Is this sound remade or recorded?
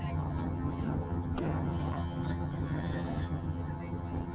remade